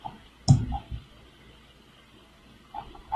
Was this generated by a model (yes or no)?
no